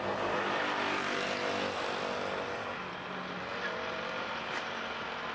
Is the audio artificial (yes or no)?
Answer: no